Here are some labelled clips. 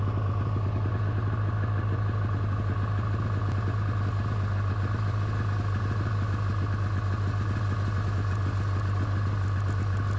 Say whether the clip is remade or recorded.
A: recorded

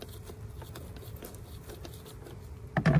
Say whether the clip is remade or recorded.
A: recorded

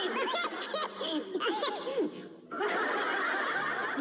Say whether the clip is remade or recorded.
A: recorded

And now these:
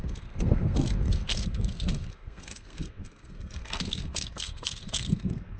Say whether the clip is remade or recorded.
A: remade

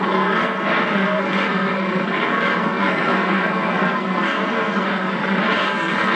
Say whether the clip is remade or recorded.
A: remade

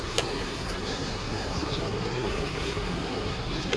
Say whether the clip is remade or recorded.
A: remade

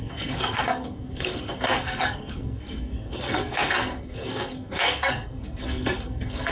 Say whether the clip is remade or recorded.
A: remade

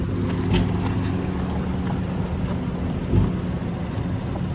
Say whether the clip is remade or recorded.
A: recorded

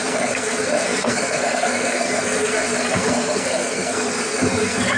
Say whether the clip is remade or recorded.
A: remade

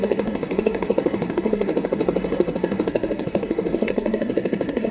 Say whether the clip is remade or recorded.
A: remade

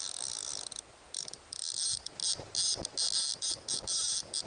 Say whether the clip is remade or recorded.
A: recorded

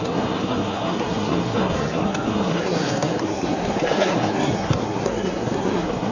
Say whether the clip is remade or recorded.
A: remade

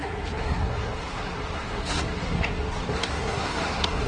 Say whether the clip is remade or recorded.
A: remade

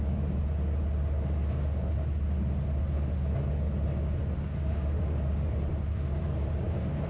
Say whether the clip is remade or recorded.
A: recorded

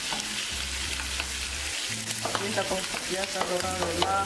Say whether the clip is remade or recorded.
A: recorded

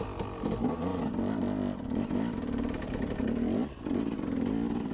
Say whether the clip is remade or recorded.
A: recorded